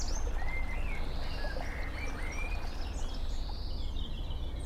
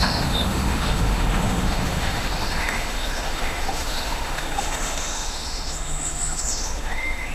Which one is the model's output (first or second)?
second